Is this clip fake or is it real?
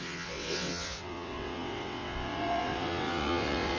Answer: fake